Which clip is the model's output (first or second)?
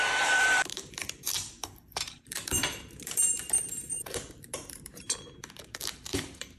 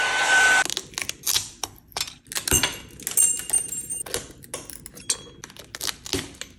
first